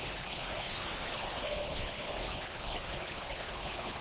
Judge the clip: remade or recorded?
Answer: remade